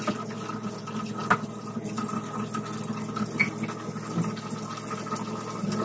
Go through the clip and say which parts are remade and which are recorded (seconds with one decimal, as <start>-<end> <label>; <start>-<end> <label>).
0.0-5.8 recorded